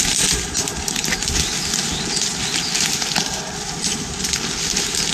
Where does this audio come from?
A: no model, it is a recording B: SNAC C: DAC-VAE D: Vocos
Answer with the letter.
A